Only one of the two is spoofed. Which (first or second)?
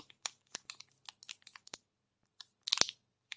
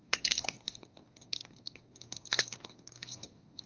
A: second